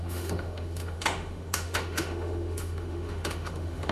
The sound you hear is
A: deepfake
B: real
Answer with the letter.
A